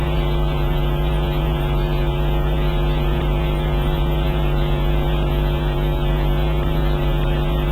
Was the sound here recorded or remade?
remade